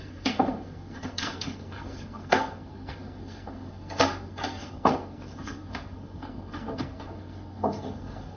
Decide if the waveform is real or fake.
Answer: fake